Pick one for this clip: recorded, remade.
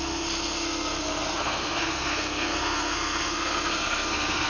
remade